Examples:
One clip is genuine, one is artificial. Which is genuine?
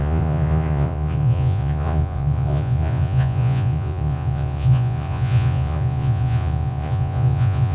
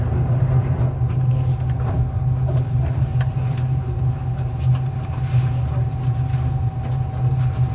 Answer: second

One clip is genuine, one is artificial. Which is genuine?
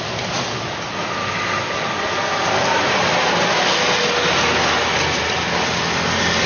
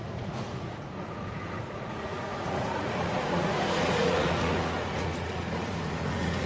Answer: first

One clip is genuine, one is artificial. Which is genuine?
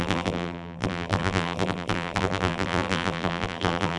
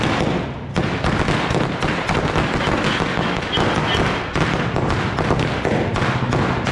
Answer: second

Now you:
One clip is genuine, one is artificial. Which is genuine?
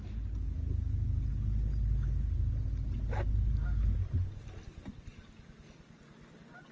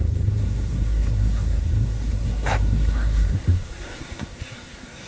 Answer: first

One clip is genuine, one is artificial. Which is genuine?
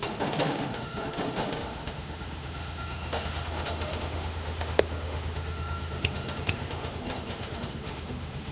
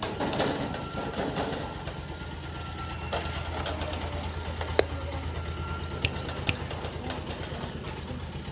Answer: second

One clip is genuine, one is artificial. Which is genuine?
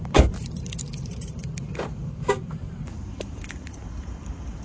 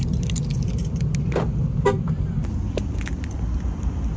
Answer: second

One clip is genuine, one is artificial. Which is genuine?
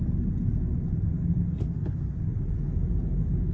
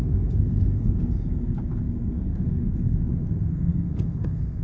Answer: first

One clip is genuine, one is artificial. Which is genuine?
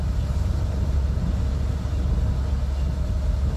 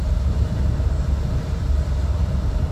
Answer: first